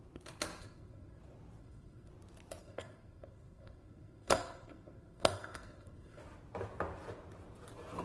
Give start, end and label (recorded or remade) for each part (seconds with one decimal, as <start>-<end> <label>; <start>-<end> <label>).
0.0-0.6 recorded; 0.6-1.2 remade; 1.2-1.6 recorded; 1.6-2.1 remade; 2.1-2.6 recorded; 2.6-6.2 remade; 6.2-8.0 recorded